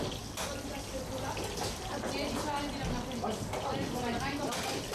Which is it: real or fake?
real